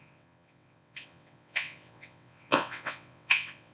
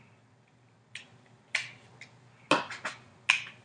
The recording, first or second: second